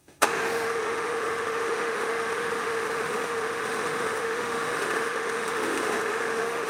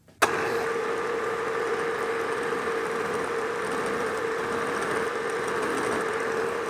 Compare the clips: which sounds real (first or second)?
second